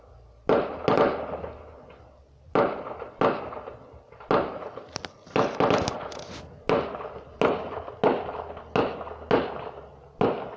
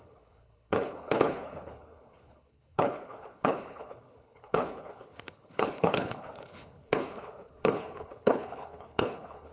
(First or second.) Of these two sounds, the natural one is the first